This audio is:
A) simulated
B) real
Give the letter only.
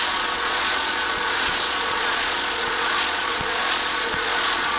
A